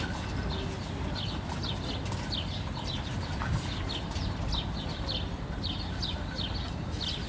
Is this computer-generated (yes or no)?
no